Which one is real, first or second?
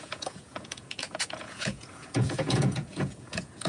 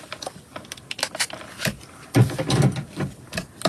second